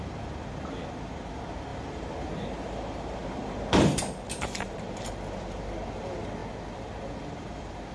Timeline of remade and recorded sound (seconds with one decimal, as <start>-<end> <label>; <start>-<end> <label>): 0.0-1.7 recorded; 1.7-5.1 remade; 5.1-7.9 recorded